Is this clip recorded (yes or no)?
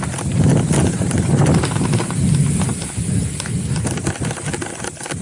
yes